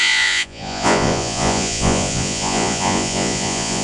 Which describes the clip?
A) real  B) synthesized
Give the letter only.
B